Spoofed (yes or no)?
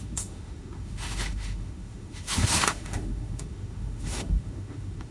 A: yes